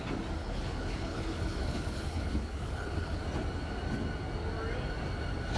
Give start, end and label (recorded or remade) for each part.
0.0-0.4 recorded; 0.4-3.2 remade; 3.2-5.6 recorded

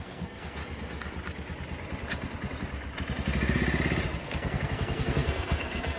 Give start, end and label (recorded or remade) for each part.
0.0-0.6 remade; 0.6-4.2 recorded; 4.2-6.0 remade

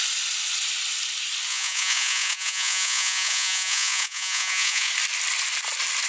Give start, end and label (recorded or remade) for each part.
0.0-1.5 recorded; 1.5-4.9 remade; 4.9-6.1 recorded

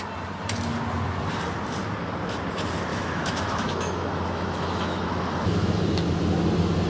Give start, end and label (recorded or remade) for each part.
0.0-2.9 recorded; 2.9-5.8 remade; 5.8-6.9 recorded

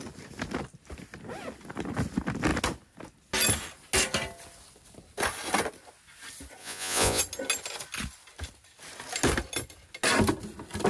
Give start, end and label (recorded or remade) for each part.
0.0-6.6 recorded; 6.6-7.2 remade; 7.2-10.9 recorded

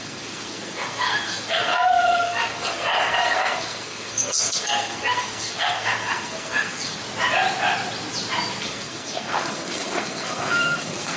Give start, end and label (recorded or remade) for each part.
0.0-7.0 remade; 7.0-8.6 recorded; 8.6-11.2 remade

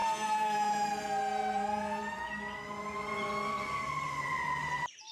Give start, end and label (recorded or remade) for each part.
0.0-5.1 remade

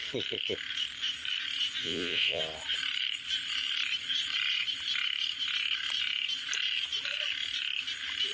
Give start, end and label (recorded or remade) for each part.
0.0-1.8 recorded; 1.8-2.4 remade; 2.4-8.3 recorded